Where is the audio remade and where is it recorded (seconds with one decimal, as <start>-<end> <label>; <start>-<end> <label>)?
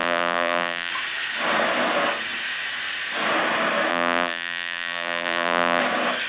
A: 0.0-0.9 remade; 0.9-3.9 recorded; 3.9-5.8 remade; 5.8-6.3 recorded